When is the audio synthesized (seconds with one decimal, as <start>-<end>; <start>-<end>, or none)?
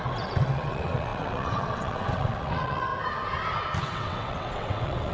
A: 0.0-2.9; 3.8-5.1